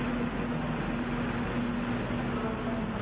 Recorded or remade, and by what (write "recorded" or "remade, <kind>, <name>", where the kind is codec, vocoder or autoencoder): recorded